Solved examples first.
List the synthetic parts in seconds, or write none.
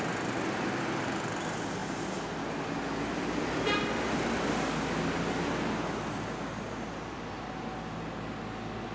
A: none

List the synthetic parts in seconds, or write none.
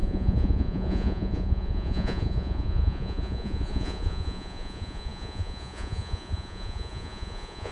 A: 0.0-7.7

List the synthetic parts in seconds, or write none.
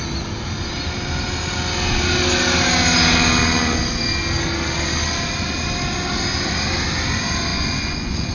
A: 7.5-8.3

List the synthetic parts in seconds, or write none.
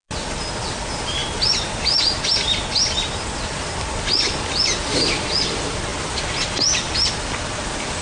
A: none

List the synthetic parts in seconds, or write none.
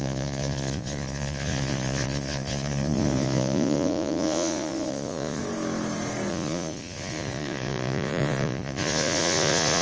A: 0.0-5.4; 6.3-9.8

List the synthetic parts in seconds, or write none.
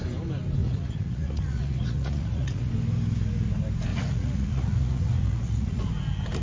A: 0.6-2.7; 3.9-5.8